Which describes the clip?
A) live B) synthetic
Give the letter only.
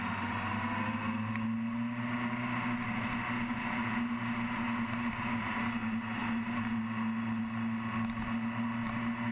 A